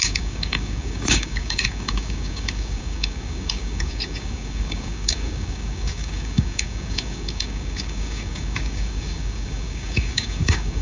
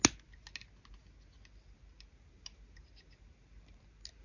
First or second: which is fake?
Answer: first